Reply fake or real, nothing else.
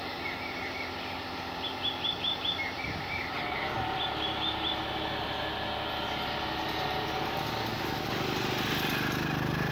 real